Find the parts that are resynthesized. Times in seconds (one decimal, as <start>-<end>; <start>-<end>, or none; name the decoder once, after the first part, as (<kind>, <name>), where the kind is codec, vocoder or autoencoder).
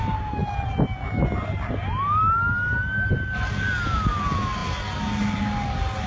none